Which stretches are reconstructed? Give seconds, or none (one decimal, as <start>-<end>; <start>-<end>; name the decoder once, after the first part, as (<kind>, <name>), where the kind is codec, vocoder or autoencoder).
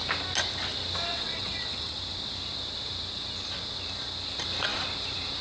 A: 1.1-2.0 (vocoder, WaveNeXt)